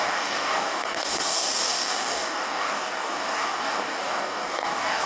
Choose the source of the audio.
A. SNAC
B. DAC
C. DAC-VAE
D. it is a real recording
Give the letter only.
B